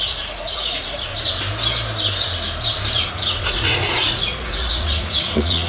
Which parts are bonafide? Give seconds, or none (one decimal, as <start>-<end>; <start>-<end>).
1.1-3.1